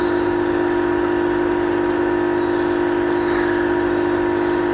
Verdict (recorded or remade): recorded